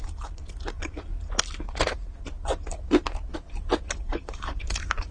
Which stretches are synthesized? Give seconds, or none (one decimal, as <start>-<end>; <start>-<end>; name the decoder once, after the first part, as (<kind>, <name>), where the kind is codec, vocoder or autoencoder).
0.0-1.1 (vocoder, BigVGAN v2); 3.9-5.1